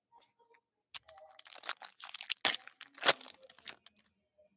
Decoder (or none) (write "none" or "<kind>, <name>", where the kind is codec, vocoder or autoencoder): none